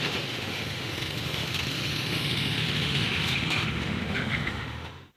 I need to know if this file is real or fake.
fake